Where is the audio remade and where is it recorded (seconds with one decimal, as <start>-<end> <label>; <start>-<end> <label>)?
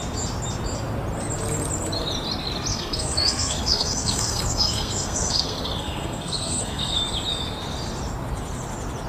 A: 0.0-2.7 recorded; 2.7-7.0 remade; 7.0-9.1 recorded